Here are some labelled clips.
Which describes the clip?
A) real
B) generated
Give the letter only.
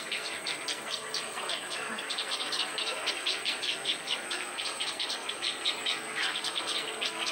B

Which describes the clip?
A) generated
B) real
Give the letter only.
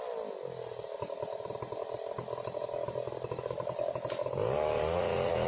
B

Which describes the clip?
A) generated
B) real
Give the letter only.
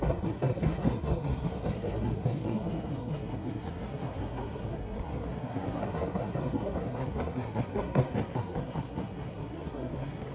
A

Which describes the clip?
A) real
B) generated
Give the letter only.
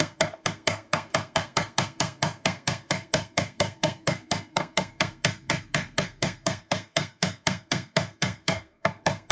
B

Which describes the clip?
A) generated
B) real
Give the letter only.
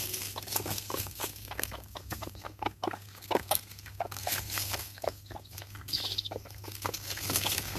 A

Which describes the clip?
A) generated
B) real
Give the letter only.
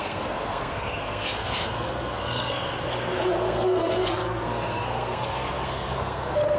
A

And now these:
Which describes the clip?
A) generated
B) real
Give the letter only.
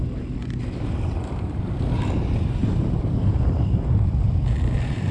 B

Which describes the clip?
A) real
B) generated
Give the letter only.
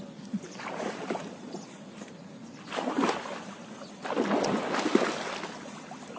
A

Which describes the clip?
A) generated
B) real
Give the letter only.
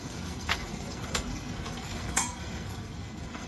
A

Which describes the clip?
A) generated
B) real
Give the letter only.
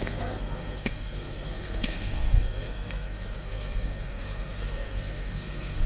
A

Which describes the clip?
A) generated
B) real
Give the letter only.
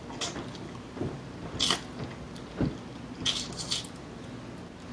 B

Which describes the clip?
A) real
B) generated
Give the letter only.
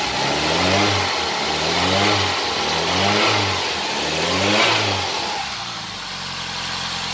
A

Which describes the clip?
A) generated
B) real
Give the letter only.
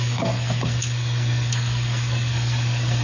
A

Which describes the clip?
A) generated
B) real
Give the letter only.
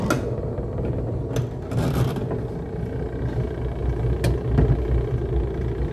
B